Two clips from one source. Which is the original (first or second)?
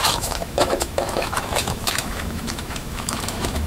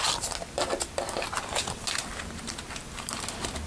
second